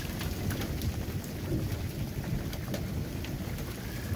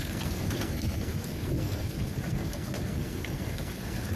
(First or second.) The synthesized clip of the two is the second